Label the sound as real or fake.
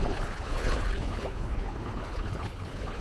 fake